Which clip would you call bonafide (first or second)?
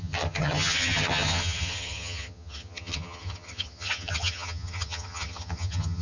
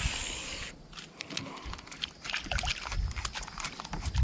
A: second